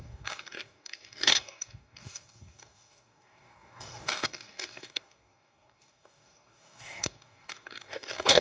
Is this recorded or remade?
remade